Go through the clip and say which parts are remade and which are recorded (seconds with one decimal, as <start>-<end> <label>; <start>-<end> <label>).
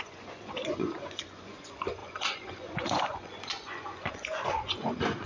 0.0-5.3 remade